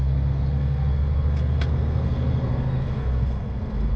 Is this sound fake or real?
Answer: fake